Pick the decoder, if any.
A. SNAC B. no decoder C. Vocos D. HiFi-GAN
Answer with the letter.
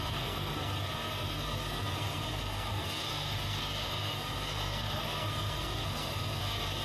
A